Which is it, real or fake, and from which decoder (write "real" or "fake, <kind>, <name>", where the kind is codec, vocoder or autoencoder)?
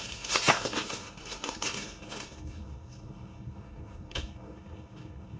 fake, codec, SNAC